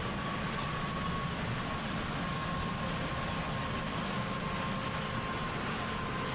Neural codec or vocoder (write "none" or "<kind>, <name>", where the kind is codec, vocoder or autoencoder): none